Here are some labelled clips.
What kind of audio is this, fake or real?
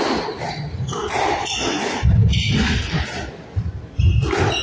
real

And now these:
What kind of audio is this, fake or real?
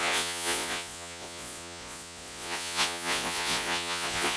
fake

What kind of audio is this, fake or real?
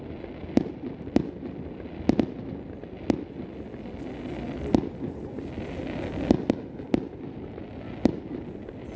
real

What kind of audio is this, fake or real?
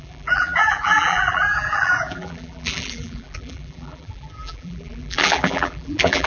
fake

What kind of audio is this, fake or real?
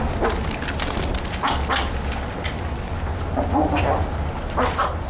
real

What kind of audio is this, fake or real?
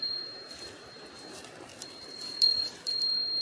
real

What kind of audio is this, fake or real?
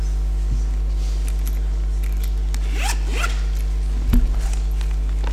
real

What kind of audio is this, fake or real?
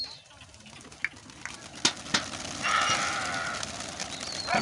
real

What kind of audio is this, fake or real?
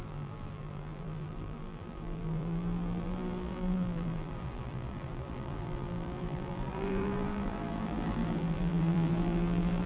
fake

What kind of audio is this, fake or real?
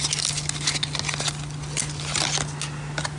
real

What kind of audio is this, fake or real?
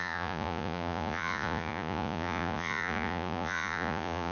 fake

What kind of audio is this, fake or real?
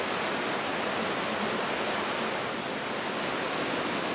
real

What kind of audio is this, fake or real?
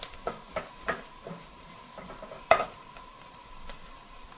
fake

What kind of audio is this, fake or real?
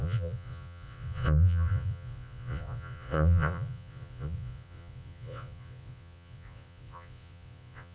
fake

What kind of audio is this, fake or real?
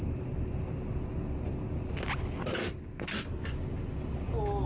real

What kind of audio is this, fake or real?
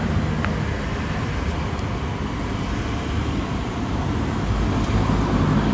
real